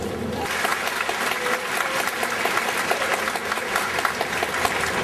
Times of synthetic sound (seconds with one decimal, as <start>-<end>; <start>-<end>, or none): 0.0-0.7; 3.7-5.0